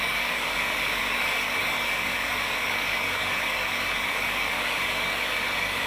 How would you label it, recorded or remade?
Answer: remade